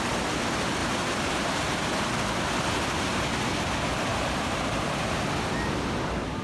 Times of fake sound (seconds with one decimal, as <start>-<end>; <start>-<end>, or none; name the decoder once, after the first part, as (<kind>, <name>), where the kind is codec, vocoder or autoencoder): 0.8-1.8 (vocoder, BigVGAN v2); 4.1-5.2

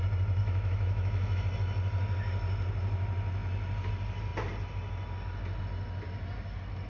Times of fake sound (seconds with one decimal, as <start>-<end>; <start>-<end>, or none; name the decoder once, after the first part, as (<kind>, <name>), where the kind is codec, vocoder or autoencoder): 0.4-1.4 (autoencoder, DAC-VAE)

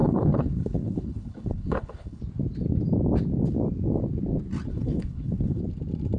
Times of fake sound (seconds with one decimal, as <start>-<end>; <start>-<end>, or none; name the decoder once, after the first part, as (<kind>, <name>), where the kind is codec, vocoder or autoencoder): 0.0-2.2 (codec, HILCodec); 4.7-5.6

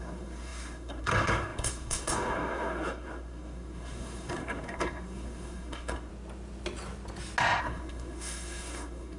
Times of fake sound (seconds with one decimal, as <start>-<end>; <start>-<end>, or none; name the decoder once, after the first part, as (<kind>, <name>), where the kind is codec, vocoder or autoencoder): 0.0-6.1 (codec, SNAC); 7.6-9.2